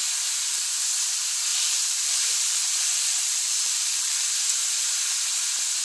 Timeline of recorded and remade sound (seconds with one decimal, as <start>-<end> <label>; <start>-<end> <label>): 0.0-1.5 recorded; 1.5-4.4 remade; 4.4-5.8 recorded